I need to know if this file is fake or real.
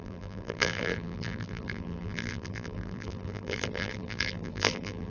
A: fake